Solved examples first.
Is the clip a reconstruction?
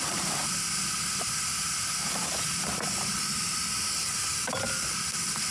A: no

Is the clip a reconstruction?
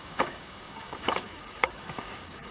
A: yes